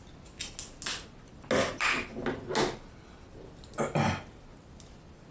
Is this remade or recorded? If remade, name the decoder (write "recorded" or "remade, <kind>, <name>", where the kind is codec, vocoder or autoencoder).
recorded